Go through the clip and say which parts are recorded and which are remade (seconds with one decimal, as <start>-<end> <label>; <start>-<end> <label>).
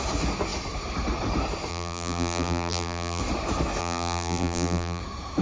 0.0-1.7 recorded; 1.7-3.2 remade; 3.2-3.8 recorded; 3.8-5.0 remade; 5.0-5.4 recorded